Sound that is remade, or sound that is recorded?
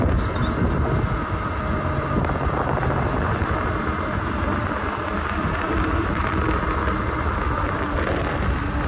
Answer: recorded